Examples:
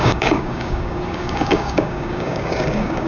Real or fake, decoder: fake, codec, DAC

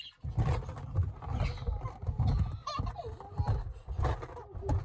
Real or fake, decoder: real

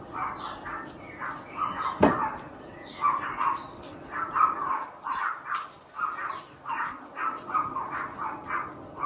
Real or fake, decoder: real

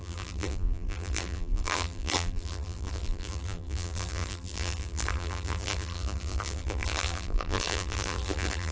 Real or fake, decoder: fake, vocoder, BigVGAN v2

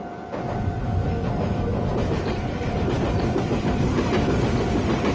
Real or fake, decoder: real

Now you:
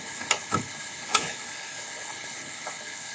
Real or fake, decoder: fake, codec, HILCodec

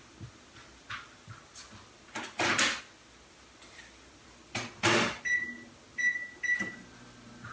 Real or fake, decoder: real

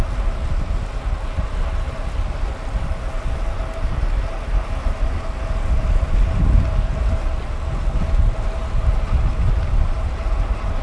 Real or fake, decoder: real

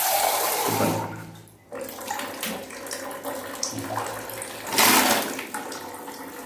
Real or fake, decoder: real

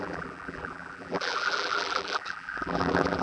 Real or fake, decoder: fake, vocoder, BigVGAN v2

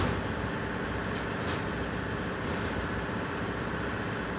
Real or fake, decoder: fake, vocoder, BigVGAN v2